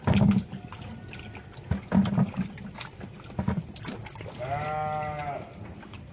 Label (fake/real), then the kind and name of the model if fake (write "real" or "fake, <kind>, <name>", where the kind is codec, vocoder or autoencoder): real